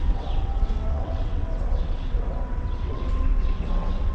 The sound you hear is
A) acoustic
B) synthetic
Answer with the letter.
B